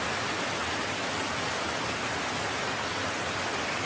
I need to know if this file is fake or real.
real